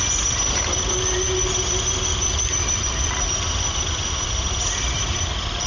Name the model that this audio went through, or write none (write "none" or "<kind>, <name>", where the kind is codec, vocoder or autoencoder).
none